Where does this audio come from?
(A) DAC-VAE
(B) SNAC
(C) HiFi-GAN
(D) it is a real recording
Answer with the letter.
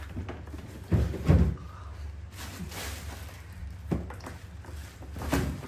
D